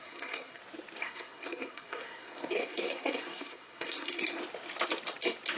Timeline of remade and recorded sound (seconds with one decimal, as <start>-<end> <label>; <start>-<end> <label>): 0.0-0.6 remade; 0.6-1.0 recorded; 1.0-4.4 remade; 4.4-5.6 recorded